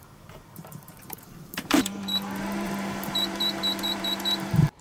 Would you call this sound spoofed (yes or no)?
yes